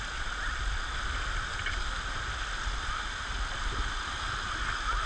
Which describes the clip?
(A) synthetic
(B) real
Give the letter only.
B